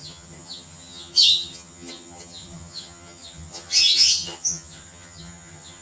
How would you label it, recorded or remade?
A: remade